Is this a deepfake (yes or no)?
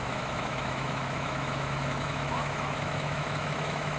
yes